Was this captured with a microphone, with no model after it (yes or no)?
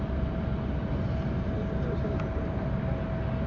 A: yes